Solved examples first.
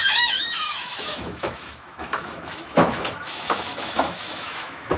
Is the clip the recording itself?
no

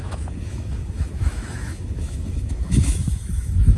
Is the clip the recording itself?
no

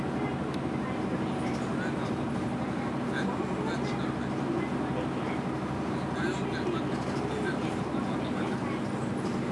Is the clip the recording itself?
yes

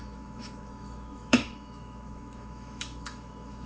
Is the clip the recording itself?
no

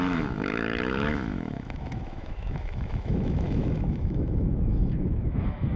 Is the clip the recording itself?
no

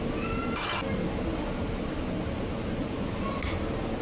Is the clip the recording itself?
yes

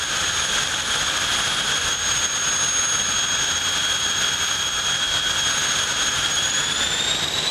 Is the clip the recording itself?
yes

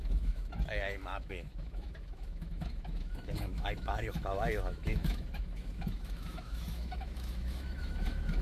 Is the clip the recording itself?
no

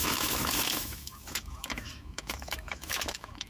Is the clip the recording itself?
no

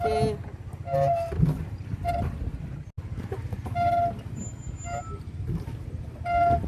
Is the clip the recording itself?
yes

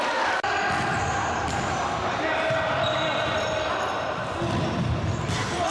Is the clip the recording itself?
yes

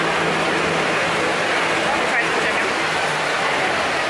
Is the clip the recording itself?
yes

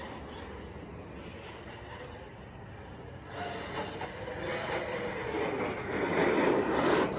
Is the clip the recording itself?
yes